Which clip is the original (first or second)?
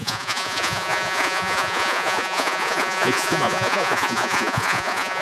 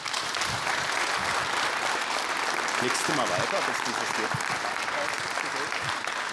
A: second